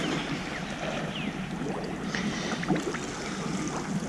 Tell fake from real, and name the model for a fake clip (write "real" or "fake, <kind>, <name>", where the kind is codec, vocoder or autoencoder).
real